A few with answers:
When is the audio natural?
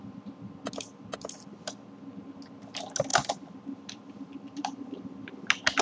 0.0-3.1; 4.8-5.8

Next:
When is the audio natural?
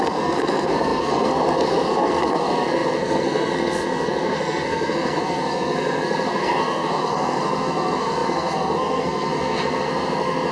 none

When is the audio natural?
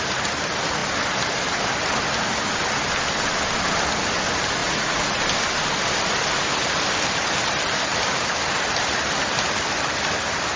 0.0-4.6; 5.2-10.6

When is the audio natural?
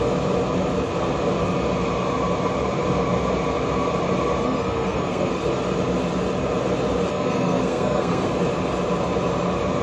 0.0-4.4; 5.3-7.1; 8.3-9.8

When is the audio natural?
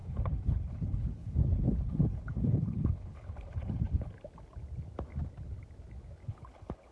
4.1-6.2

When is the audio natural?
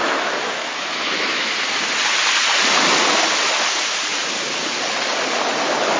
1.5-6.0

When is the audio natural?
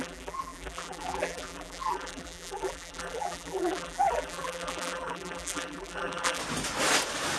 6.4-7.4